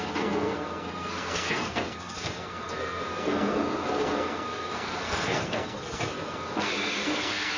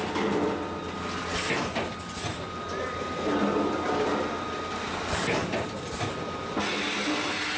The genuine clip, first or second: second